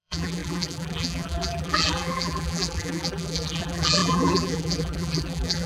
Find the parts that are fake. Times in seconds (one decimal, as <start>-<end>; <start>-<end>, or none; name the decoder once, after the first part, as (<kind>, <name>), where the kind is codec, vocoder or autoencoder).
0.0-5.7 (vocoder, BigVGAN v2)